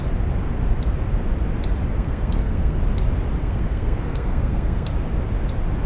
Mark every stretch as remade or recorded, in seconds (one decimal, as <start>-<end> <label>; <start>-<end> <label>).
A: 0.0-1.9 recorded; 1.9-2.8 remade; 2.8-3.4 recorded; 3.4-4.9 remade; 4.9-5.9 recorded